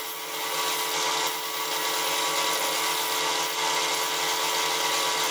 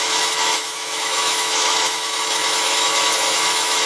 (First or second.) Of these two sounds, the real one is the first